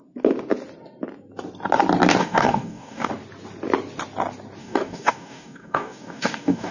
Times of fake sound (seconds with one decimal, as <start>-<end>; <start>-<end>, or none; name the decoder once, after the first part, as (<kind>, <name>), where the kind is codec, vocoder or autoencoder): 2.2-3.1 (codec, DAC); 4.6-6.7